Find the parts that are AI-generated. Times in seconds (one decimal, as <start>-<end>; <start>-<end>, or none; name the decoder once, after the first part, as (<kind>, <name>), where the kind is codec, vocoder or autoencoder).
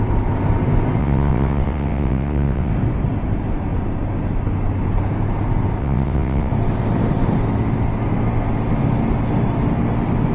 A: 1.0-2.7 (vocoder, WaveNeXt); 5.8-6.5